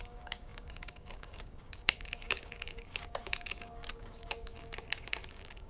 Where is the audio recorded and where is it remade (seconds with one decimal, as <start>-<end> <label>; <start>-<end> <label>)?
0.0-5.7 remade